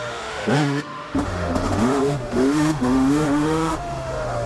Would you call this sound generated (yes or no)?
yes